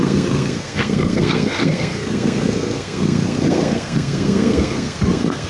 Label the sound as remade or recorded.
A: remade